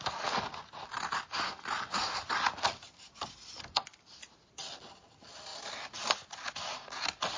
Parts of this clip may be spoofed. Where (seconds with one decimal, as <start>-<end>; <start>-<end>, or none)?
none